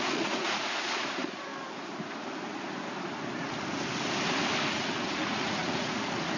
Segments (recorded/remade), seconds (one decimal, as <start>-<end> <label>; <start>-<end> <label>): 0.0-1.5 remade; 1.5-4.7 recorded; 4.7-6.4 remade